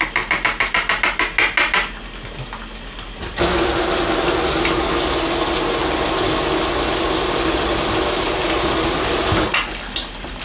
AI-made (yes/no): no